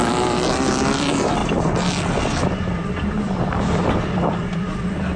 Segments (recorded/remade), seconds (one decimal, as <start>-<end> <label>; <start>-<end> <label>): 0.0-5.2 remade